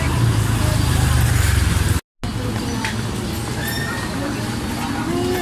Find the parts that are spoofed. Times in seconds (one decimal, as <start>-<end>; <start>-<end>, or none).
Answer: none